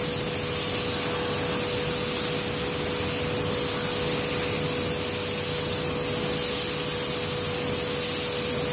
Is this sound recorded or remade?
recorded